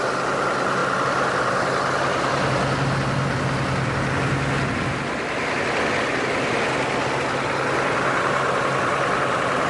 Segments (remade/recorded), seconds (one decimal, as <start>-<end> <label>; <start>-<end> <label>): 0.0-9.7 recorded

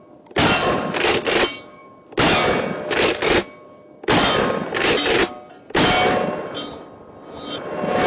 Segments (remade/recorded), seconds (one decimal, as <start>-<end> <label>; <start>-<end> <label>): 0.0-8.1 recorded

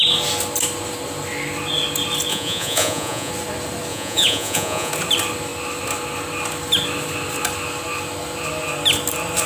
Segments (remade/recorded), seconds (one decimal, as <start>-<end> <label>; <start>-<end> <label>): 0.0-2.3 recorded; 2.3-3.3 remade; 3.3-3.9 recorded; 3.9-4.9 remade; 4.9-9.5 recorded